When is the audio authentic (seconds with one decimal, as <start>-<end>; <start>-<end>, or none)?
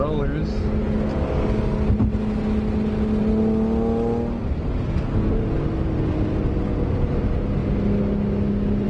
0.0-8.9